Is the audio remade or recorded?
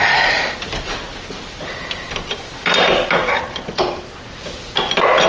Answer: recorded